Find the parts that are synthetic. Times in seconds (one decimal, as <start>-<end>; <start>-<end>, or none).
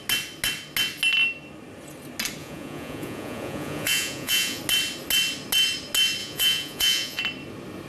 2.4-4.6; 6.2-7.2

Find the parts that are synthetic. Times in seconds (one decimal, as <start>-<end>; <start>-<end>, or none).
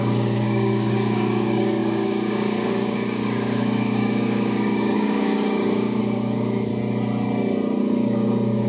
0.0-6.7; 7.8-8.7